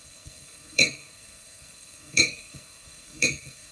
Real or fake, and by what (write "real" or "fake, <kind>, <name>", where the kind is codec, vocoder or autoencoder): fake, codec, SNAC